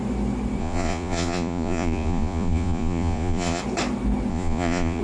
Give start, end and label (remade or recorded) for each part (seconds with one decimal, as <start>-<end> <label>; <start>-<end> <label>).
0.0-0.6 recorded; 0.6-3.6 remade; 3.6-4.3 recorded; 4.3-5.0 remade